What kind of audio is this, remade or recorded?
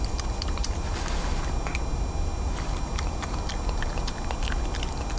recorded